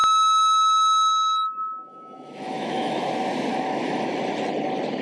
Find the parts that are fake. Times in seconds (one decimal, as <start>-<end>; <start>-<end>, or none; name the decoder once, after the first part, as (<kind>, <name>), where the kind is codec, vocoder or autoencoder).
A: 0.0-3.0 (autoencoder, DAC-VAE); 3.5-4.1